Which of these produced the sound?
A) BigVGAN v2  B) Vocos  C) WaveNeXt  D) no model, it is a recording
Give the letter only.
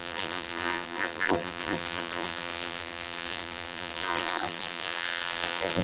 A